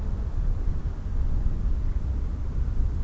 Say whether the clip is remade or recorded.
remade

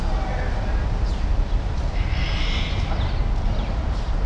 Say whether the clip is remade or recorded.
recorded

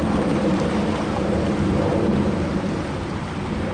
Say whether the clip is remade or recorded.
remade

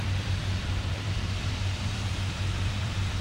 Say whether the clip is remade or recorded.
remade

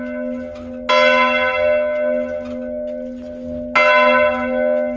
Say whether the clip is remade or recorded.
recorded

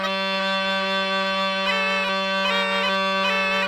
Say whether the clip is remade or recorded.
recorded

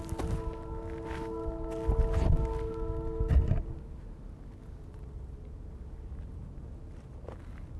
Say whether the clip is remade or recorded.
recorded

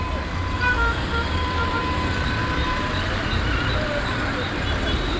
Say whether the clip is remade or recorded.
remade